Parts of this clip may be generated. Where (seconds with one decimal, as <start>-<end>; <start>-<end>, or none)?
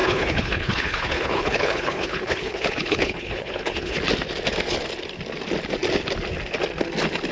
0.0-4.0